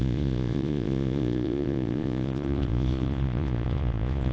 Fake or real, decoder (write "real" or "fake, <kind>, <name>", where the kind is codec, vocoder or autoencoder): fake, vocoder, Vocos